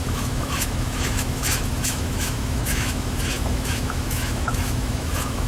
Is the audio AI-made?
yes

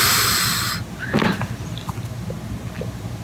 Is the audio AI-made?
no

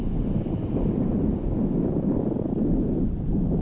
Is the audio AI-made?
no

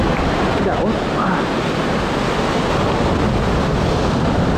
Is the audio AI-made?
no